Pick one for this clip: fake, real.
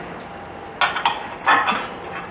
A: real